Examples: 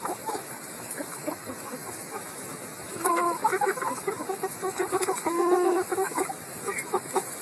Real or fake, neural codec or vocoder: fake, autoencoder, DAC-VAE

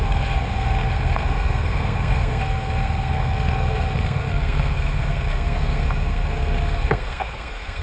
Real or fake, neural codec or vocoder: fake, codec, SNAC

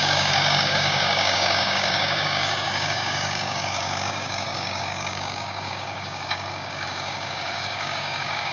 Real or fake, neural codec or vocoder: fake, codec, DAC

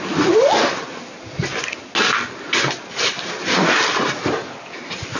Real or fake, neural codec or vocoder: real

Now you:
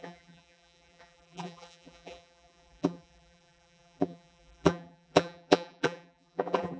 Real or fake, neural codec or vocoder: fake, vocoder, BigVGAN v2